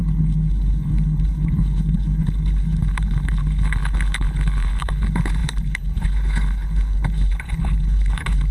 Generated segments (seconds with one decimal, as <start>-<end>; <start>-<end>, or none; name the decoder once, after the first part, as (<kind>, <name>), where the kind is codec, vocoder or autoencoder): 0.0-8.5 (codec, HILCodec)